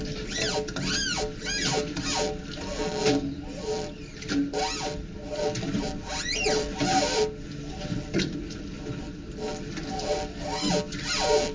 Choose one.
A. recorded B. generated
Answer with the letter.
A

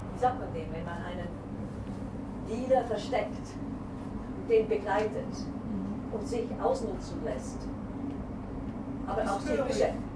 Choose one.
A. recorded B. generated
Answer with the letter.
A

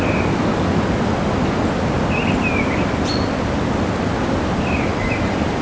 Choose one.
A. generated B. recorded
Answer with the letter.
B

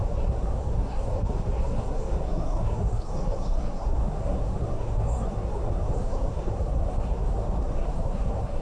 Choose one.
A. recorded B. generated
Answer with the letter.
B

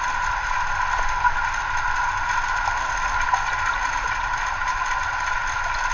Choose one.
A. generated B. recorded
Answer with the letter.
B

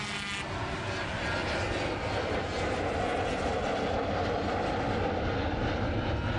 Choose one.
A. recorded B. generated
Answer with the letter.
A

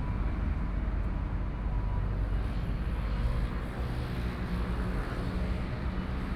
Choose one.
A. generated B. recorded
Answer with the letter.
B